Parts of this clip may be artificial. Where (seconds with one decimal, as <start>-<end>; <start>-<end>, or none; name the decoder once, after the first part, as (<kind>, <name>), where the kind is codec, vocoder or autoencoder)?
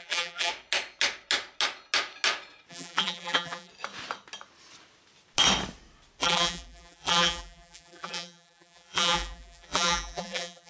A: 0.0-0.5 (vocoder, BigVGAN v2); 2.7-3.7; 6.2-10.7